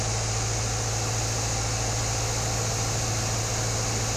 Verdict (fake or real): real